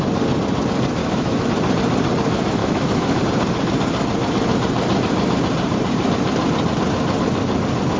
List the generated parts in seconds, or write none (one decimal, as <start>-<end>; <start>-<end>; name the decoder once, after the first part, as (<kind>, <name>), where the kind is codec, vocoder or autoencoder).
1.0-1.5 (autoencoder, DAC-VAE); 2.6-3.2